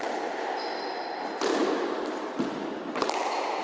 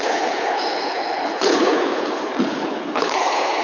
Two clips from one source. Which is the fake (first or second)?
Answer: second